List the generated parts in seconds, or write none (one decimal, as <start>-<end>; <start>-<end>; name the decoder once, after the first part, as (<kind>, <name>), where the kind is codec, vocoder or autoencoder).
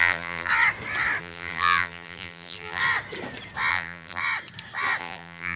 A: 0.0-0.5 (vocoder, BigVGAN v2); 1.2-2.8; 3.7-4.2; 5.0-5.6